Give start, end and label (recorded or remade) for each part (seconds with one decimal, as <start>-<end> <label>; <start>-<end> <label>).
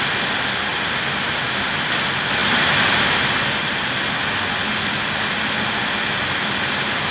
0.0-0.7 recorded; 0.7-1.3 remade; 1.3-2.4 recorded; 2.4-4.1 remade; 4.1-7.1 recorded